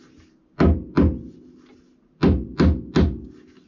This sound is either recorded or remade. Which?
recorded